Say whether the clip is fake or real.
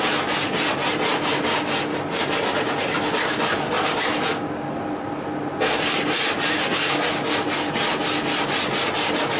real